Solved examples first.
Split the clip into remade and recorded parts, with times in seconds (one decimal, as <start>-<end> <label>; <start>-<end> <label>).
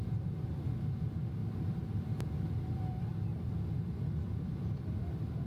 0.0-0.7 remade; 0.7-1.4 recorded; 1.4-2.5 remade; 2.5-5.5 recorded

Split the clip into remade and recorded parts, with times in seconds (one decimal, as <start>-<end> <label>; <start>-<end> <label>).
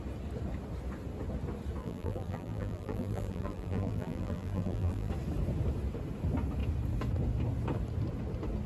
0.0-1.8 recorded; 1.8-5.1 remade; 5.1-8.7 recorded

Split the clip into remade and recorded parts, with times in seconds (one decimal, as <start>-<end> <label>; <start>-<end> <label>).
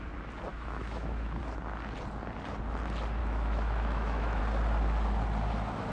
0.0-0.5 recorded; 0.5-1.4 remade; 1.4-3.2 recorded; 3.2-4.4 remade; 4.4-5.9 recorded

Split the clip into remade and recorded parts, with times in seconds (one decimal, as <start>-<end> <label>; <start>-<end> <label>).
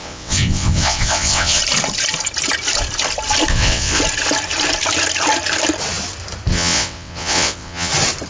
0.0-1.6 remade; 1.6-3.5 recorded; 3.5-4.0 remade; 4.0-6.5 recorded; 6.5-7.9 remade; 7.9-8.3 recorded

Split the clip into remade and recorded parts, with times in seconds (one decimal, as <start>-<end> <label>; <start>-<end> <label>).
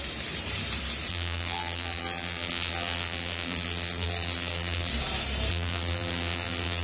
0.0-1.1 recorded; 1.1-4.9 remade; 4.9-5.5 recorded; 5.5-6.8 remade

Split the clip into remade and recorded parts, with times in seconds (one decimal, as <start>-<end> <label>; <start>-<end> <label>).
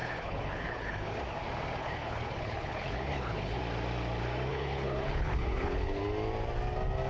0.0-1.2 remade; 1.2-1.8 recorded; 1.8-3.6 remade; 3.6-4.5 recorded; 4.5-6.0 remade; 6.0-7.1 recorded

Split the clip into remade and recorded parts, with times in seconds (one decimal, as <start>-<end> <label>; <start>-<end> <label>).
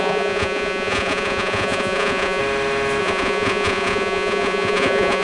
0.0-2.4 remade; 2.4-3.0 recorded; 3.0-5.2 remade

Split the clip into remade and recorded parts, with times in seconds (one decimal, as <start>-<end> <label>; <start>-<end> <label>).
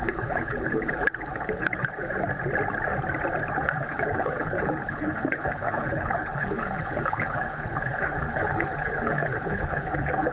0.0-2.0 remade; 2.0-3.5 recorded; 3.5-10.3 remade